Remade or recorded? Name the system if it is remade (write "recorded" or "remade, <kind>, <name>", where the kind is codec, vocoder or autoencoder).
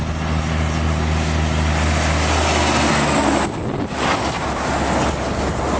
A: recorded